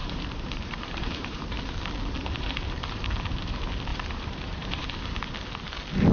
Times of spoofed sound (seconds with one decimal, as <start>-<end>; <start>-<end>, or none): 0.0-1.4; 2.2-3.0; 3.9-4.9